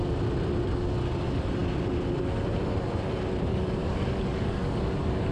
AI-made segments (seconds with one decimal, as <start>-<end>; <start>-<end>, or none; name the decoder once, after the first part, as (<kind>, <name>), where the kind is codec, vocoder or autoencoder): 3.5-5.3 (codec, DAC)